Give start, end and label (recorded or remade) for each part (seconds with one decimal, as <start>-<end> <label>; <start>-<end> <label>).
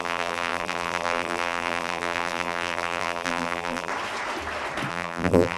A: 0.0-3.9 remade; 3.9-4.9 recorded; 4.9-5.6 remade